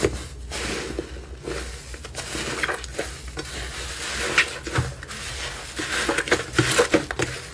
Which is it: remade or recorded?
recorded